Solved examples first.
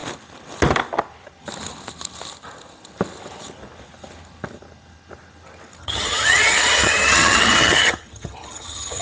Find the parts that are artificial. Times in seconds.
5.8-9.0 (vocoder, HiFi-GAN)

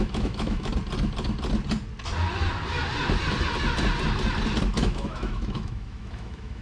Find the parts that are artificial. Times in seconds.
0.0-0.7 (autoencoder, DAC-VAE); 4.7-6.6

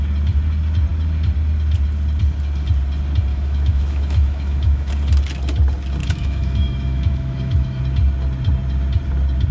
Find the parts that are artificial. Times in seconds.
3.3-4.9 (autoencoder, DAC-VAE); 6.0-7.8

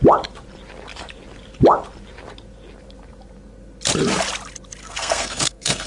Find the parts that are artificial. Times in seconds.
4.8-5.9 (codec, SNAC)

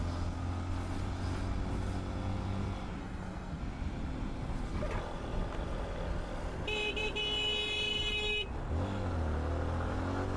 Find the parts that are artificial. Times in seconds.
3.0-3.6 (codec, SNAC)